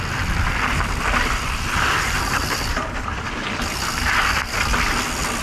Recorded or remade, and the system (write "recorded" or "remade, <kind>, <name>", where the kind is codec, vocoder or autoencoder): recorded